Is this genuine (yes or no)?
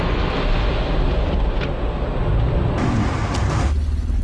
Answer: yes